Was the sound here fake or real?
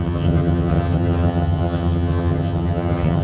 fake